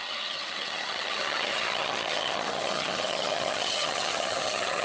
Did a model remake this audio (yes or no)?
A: yes